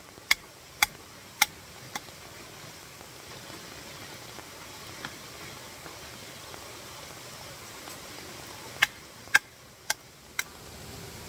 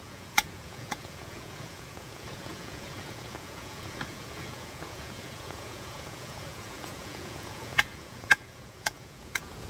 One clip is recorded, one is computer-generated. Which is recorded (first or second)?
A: first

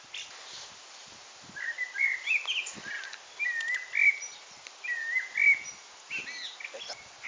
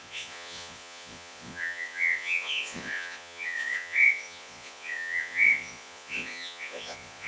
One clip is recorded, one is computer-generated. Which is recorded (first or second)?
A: first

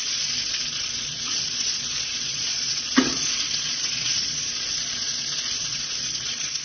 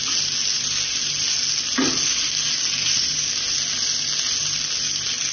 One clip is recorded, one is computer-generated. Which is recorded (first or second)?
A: second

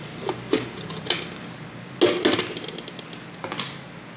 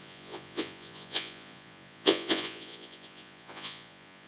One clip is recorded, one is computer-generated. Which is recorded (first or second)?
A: first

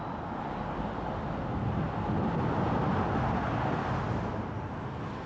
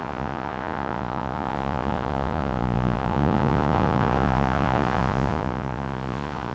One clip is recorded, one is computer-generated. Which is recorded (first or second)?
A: first